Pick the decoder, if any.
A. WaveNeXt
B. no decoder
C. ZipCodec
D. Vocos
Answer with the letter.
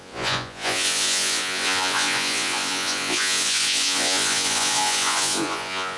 D